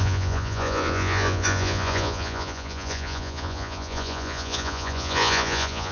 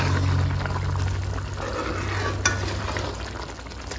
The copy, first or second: first